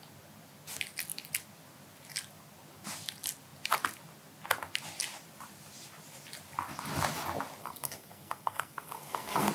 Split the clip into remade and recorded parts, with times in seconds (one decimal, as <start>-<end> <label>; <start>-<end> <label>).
0.0-7.6 recorded; 7.6-9.5 remade